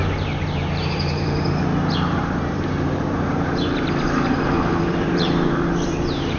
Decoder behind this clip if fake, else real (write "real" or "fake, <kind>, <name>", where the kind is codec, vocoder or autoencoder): fake, vocoder, BigVGAN v2